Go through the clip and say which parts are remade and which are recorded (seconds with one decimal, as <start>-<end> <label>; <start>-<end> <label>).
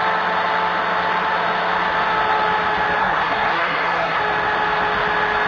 0.0-3.0 recorded; 3.0-4.2 remade; 4.2-5.5 recorded